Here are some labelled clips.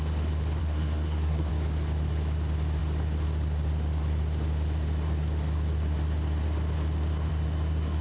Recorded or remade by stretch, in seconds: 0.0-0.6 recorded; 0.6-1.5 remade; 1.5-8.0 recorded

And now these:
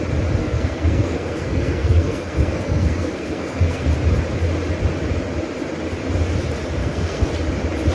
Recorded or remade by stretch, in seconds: 0.0-0.4 recorded; 0.4-3.9 remade; 3.9-6.8 recorded; 6.8-7.3 remade; 7.3-7.9 recorded

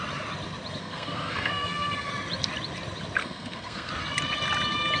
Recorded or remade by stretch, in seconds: 0.0-0.8 recorded; 0.8-2.1 remade; 2.1-3.2 recorded; 3.2-3.9 remade; 3.9-5.0 recorded

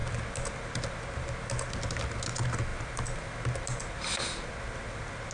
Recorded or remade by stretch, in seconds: 0.0-5.3 recorded

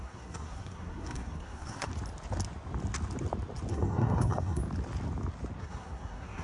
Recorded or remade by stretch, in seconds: 0.0-1.9 remade; 1.9-3.7 recorded; 3.7-4.6 remade; 4.6-5.6 recorded; 5.6-6.4 remade

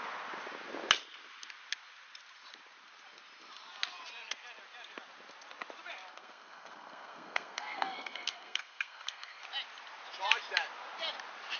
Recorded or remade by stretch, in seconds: 0.0-6.1 recorded; 6.1-9.4 remade; 9.4-11.6 recorded

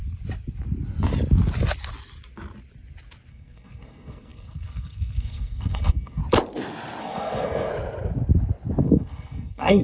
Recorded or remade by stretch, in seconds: 0.0-3.3 recorded; 3.3-6.2 remade; 6.2-7.0 recorded; 7.0-7.7 remade; 7.7-8.8 recorded; 8.8-9.8 remade

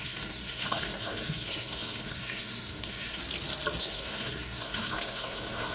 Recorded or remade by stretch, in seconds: 0.0-3.2 remade; 3.2-3.8 recorded; 3.8-5.7 remade